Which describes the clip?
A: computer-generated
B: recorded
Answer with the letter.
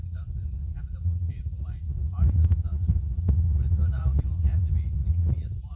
A